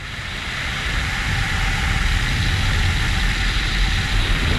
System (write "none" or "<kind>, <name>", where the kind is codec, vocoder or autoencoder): none